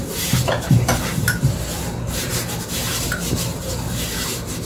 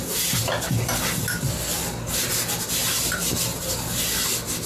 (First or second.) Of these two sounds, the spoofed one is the first